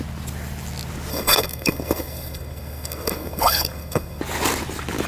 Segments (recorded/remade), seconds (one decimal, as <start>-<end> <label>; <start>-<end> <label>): 0.0-1.1 recorded; 1.1-4.2 remade; 4.2-5.1 recorded